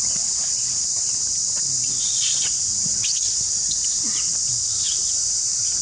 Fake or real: fake